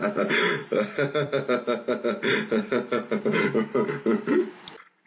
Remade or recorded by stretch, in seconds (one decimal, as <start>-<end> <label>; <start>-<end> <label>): 0.0-0.6 recorded; 0.6-3.2 remade; 3.2-5.1 recorded

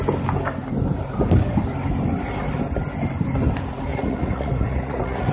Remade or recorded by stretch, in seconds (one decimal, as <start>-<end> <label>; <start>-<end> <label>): 0.0-3.9 recorded; 3.9-5.3 remade

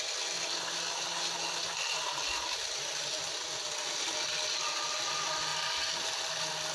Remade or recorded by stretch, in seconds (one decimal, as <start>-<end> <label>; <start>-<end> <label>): 0.0-6.7 recorded

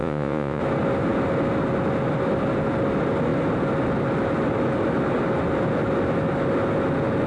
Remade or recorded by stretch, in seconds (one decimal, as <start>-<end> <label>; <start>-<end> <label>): 0.0-0.6 remade; 0.6-7.3 recorded

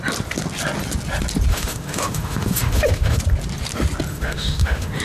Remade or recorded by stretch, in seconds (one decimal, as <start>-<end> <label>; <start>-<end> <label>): 0.0-1.5 recorded; 1.5-3.2 remade; 3.2-4.1 recorded; 4.1-5.0 remade

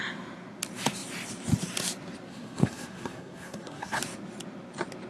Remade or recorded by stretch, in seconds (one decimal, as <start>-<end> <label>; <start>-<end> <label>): 0.0-2.3 recorded; 2.3-4.0 remade; 4.0-5.1 recorded

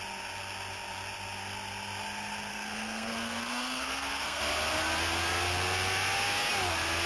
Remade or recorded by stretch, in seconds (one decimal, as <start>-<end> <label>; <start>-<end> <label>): 0.0-2.5 recorded; 2.5-4.4 remade; 4.4-7.1 recorded